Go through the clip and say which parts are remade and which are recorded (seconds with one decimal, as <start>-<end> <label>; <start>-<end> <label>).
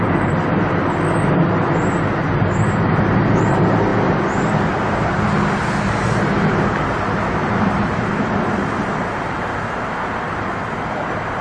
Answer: 0.0-11.4 recorded